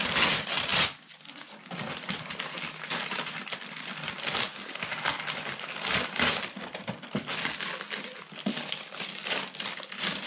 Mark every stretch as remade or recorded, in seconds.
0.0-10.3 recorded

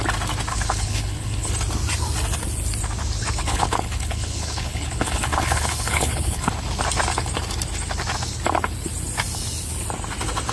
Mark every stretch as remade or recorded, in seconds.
0.0-0.5 recorded; 0.5-1.5 remade; 1.5-3.4 recorded; 3.4-6.5 remade; 6.5-10.5 recorded

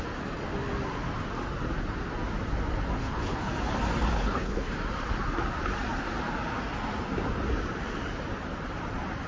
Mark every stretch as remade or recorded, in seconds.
0.0-3.0 recorded; 3.0-3.5 remade; 3.5-4.1 recorded; 4.1-4.7 remade; 4.7-9.3 recorded

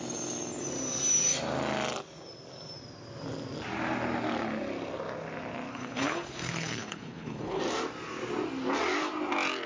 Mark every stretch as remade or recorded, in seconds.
0.0-5.7 recorded; 5.7-7.6 remade; 7.6-9.7 recorded

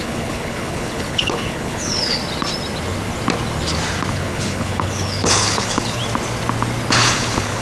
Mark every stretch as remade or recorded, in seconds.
0.0-2.2 remade; 2.2-4.1 recorded; 4.1-6.0 remade; 6.0-6.9 recorded; 6.9-7.6 remade

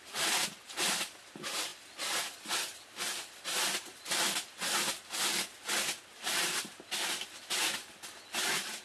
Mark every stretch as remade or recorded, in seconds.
0.0-8.8 recorded

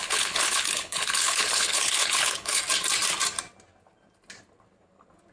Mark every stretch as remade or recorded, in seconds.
0.0-2.6 remade; 2.6-5.3 recorded

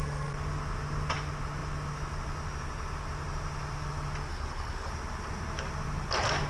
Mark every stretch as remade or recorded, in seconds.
0.0-4.3 recorded; 4.3-4.9 remade; 4.9-6.5 recorded